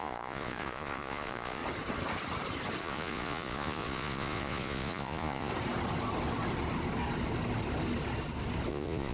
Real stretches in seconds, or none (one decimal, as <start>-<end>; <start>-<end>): 1.6-2.8; 5.5-8.7